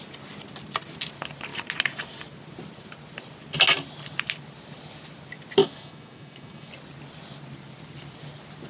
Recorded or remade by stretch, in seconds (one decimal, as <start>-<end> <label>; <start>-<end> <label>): 0.0-5.6 recorded; 5.6-6.7 remade; 6.7-8.7 recorded